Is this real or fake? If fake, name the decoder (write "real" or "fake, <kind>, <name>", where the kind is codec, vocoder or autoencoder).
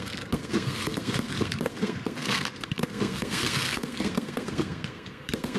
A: fake, codec, SNAC